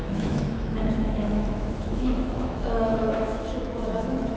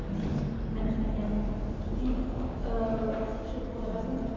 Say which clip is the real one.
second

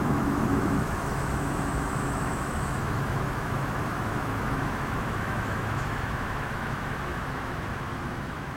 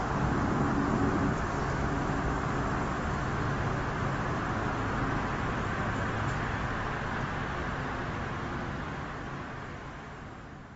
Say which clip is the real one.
second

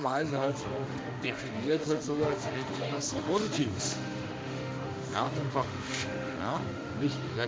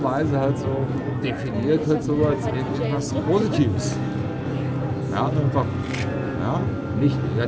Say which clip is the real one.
second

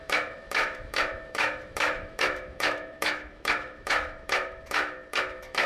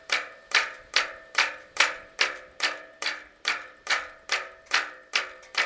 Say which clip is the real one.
second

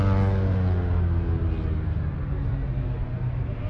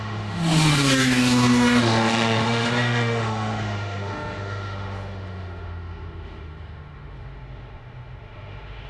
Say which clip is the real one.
first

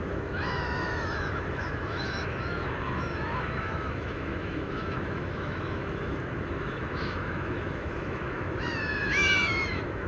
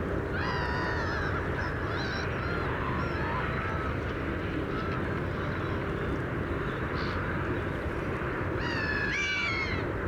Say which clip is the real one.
second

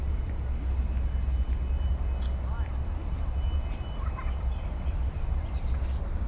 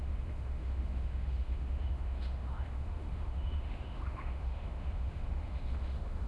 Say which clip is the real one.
first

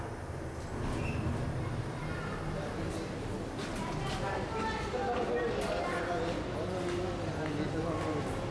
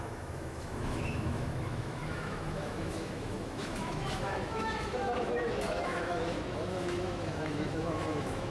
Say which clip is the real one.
first